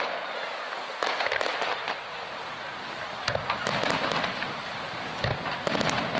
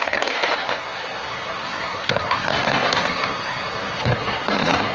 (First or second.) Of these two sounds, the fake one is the second